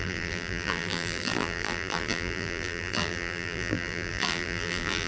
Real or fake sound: fake